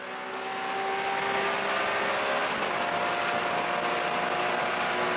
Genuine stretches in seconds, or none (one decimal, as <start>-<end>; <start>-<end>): 0.0-5.2

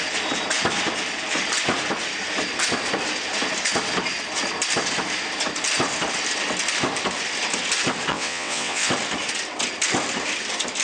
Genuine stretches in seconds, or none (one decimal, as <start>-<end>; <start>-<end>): 0.0-8.1; 8.9-10.8

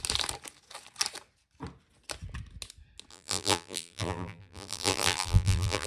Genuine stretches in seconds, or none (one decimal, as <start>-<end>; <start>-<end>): 0.0-3.1

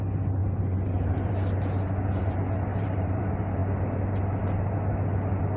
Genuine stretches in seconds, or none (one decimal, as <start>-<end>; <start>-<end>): 0.0-0.4; 1.3-2.7; 3.2-5.6

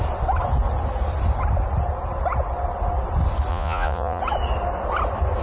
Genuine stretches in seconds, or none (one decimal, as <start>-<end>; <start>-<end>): 0.0-3.5; 4.2-5.4

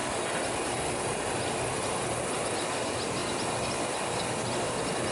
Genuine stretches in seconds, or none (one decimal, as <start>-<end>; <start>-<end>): 0.0-5.1